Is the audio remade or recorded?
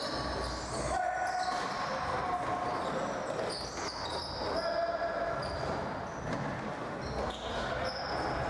recorded